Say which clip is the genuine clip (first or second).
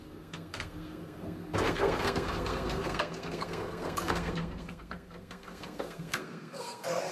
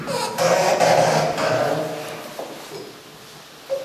second